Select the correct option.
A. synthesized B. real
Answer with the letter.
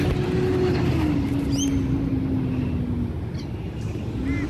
B